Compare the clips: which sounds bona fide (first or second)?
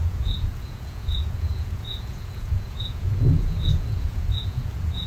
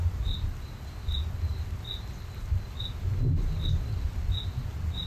second